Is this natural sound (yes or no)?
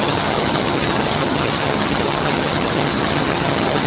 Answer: no